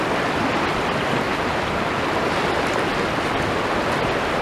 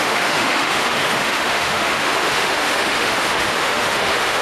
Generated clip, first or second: second